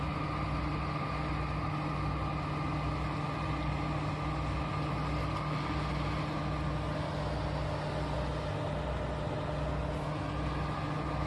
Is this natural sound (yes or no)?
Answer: yes